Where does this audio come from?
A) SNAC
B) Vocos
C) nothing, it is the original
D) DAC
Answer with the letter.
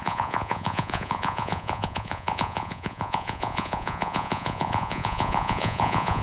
B